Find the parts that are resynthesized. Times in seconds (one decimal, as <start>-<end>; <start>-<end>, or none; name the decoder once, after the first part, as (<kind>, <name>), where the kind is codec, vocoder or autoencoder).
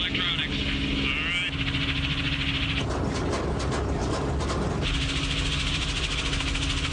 none